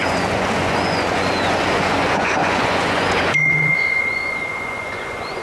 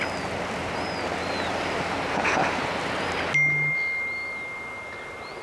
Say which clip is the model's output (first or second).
first